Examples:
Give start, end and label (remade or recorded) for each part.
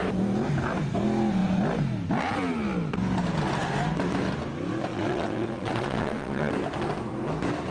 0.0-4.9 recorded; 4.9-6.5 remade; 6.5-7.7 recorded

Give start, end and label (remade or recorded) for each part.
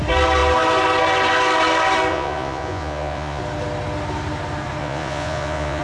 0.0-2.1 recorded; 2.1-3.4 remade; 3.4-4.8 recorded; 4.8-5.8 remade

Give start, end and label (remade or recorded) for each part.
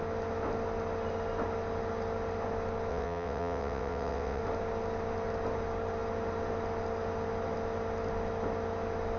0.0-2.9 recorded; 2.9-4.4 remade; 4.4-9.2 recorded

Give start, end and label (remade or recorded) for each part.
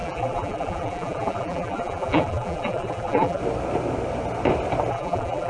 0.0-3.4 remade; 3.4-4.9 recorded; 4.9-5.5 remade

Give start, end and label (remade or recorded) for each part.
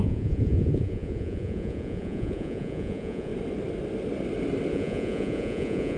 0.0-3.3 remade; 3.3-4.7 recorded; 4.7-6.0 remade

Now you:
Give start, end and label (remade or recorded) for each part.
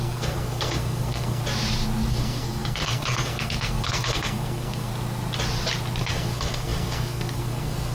0.0-1.4 remade; 1.4-2.1 recorded; 2.1-4.9 remade; 4.9-6.0 recorded; 6.0-7.9 remade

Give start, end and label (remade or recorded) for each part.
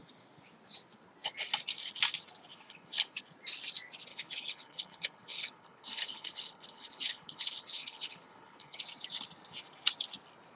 0.0-2.5 recorded; 2.5-3.2 remade; 3.2-4.1 recorded; 4.1-8.8 remade; 8.8-10.6 recorded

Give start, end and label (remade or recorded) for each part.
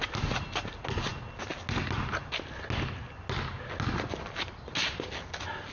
0.0-5.7 recorded